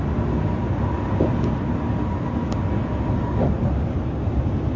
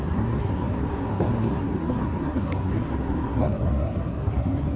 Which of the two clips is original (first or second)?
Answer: first